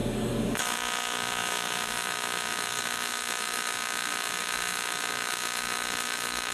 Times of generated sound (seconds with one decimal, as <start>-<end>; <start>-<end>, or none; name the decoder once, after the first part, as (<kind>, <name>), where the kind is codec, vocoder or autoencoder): 0.0-6.5 (codec, DAC)